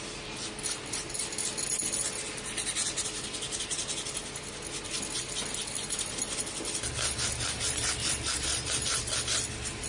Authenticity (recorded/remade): recorded